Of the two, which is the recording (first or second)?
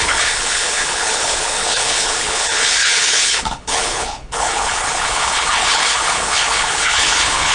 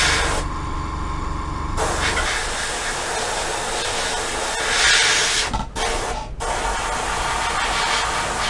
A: second